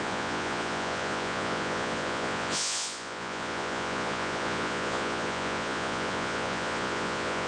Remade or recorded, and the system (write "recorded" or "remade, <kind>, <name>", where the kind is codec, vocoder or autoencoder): remade, vocoder, Vocos